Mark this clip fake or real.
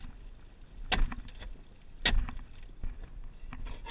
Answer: real